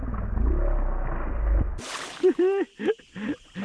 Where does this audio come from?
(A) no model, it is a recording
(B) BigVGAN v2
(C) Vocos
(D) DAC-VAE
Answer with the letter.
A